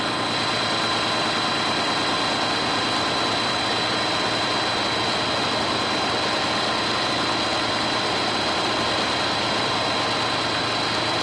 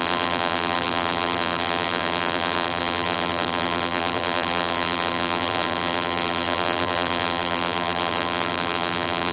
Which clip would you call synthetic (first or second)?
second